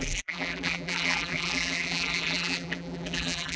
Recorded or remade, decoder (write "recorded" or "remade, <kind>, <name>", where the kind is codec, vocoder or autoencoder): remade, vocoder, BigVGAN v2